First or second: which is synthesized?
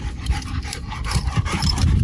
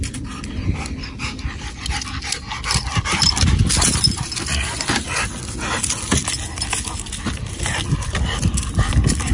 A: first